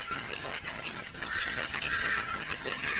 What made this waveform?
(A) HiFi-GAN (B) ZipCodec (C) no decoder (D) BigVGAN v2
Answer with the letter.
A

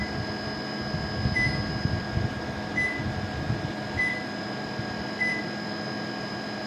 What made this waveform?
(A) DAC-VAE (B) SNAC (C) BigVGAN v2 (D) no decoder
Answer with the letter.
D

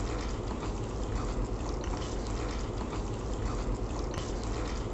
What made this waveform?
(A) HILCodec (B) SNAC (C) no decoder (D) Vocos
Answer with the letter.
C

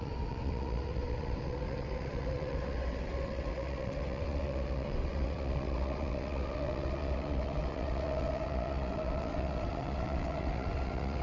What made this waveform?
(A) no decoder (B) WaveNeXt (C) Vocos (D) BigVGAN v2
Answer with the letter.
B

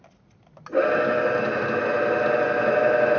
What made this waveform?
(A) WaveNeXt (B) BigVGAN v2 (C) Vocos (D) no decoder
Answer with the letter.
D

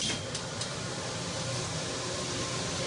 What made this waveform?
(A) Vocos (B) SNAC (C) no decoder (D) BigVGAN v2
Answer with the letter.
C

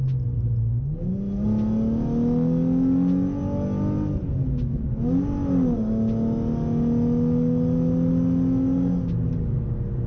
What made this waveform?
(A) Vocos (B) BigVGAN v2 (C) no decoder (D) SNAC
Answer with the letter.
C